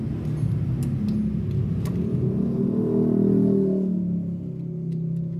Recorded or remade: recorded